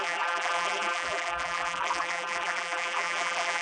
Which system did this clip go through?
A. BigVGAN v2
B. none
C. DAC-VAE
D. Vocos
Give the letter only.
A